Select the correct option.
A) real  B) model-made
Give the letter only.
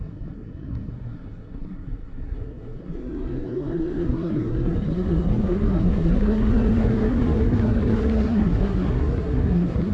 B